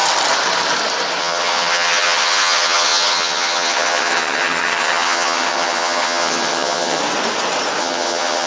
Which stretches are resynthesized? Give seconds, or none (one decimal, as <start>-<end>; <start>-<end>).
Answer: 1.2-7.0; 7.8-8.5

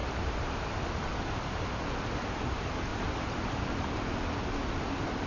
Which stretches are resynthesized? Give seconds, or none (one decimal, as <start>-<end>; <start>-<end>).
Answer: 0.0-0.8; 2.9-4.1

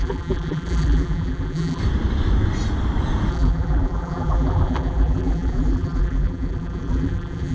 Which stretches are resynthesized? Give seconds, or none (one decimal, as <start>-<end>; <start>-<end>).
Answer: 0.0-1.8; 3.3-7.5

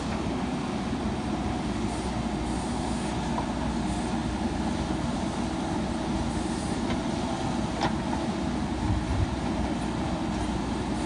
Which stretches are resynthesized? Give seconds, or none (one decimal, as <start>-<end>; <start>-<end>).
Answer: 4.2-7.0

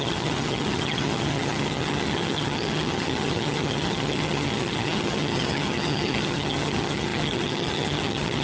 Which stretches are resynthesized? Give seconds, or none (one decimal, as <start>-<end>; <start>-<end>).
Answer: 0.0-8.4

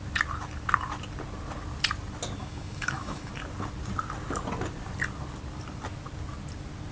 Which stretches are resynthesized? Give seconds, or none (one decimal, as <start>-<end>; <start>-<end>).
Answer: 2.4-3.3

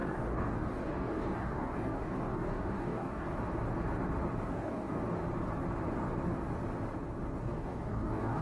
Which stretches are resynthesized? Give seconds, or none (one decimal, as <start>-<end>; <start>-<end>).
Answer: 0.0-3.3; 4.4-5.2; 7.4-8.4